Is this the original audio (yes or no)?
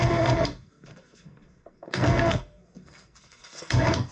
no